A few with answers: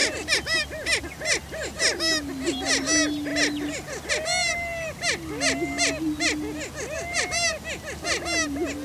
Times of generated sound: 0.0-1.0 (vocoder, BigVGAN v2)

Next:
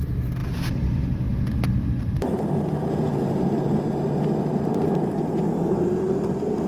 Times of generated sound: none

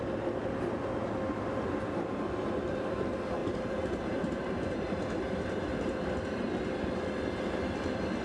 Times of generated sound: 3.4-6.1 (vocoder, BigVGAN v2)

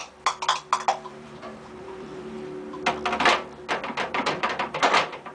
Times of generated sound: 1.1-2.2 (vocoder, BigVGAN v2); 4.1-5.3